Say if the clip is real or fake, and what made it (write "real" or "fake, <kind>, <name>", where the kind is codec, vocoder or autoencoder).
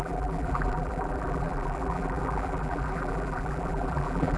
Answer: fake, vocoder, BigVGAN v2